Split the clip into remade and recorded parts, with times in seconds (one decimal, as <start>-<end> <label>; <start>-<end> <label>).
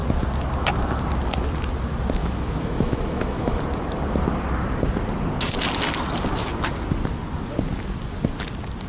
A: 0.0-2.2 recorded; 2.2-3.6 remade; 3.6-8.9 recorded